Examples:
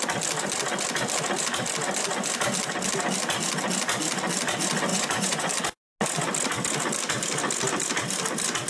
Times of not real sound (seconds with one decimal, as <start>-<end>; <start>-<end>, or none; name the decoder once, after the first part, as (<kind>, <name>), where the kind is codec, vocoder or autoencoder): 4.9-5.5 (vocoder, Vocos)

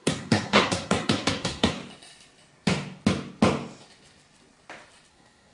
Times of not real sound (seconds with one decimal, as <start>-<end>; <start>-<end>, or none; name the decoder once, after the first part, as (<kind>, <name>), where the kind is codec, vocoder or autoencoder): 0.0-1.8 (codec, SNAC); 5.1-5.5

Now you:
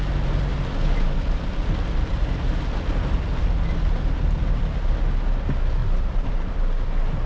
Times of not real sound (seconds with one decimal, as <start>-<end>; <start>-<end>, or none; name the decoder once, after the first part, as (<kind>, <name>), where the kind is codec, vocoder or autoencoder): 0.5-4.9 (vocoder, BigVGAN v2); 5.8-6.6